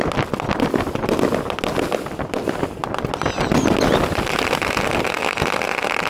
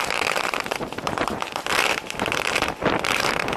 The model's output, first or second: second